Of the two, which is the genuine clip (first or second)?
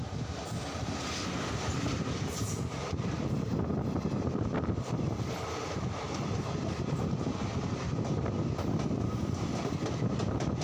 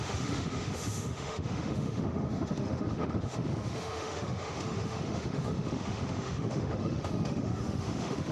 first